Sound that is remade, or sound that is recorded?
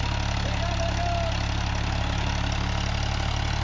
recorded